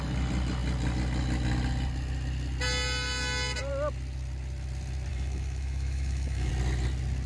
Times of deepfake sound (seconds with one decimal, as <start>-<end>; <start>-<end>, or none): 5.1-6.5